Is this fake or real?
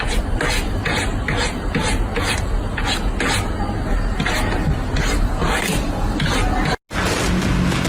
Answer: real